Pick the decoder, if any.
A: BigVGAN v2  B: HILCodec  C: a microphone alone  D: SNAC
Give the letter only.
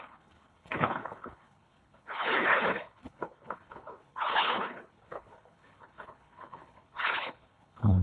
B